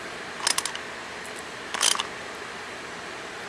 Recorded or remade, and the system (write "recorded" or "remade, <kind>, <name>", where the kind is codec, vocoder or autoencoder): recorded